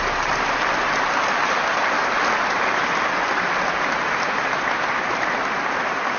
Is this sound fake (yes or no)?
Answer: no